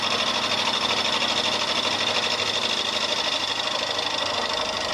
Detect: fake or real real